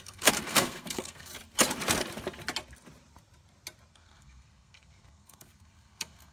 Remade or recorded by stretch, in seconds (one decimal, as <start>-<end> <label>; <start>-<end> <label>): 0.0-1.3 remade; 1.3-3.9 recorded; 3.9-6.3 remade